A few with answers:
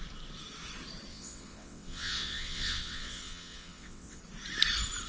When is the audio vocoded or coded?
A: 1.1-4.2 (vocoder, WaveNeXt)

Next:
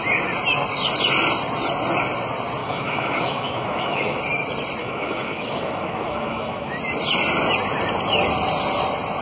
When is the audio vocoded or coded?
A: 2.6-4.2 (autoencoder, DAC-VAE); 4.8-6.7

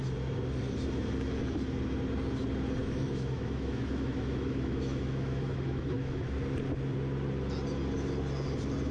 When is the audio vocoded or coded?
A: 2.8-6.4 (autoencoder, DAC-VAE)

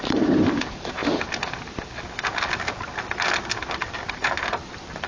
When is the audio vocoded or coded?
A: 0.0-1.0 (vocoder, BigVGAN v2); 4.1-5.1

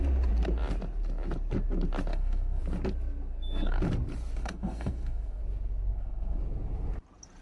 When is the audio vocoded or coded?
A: 2.1-2.6 (codec, SNAC); 3.3-3.8; 4.4-5.4; 5.9-6.4

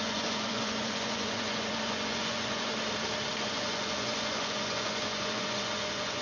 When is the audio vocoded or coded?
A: 0.0-2.7 (vocoder, Vocos); 3.3-6.2

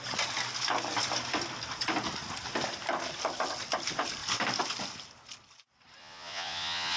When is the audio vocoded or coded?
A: 6.0-7.0 (vocoder, Vocos)